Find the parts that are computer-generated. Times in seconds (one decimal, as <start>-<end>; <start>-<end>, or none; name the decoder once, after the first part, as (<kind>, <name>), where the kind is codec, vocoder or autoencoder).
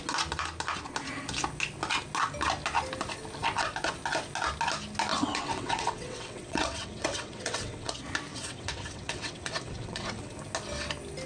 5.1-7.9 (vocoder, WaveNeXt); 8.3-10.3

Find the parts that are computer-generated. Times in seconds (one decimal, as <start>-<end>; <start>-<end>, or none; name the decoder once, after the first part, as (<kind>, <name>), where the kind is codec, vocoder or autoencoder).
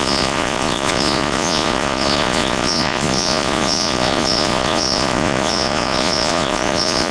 0.0-7.1 (vocoder, Vocos)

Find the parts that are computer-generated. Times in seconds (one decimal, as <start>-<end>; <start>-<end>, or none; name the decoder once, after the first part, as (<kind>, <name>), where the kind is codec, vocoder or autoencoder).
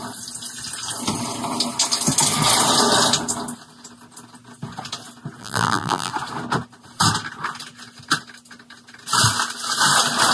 5.4-6.1 (vocoder, BigVGAN v2)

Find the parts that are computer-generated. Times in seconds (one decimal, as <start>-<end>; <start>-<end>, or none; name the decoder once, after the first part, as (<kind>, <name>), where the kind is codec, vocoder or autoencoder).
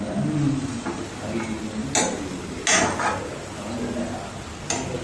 none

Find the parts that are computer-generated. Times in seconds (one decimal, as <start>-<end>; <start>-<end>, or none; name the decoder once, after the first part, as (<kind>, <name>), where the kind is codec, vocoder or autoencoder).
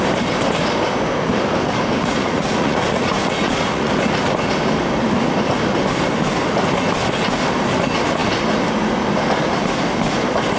2.0-3.9 (vocoder, Vocos)